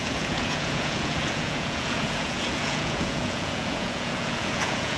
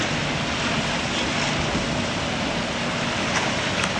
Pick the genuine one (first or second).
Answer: second